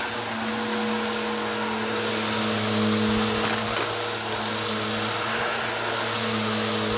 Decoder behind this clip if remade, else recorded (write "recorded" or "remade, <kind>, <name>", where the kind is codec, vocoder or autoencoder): recorded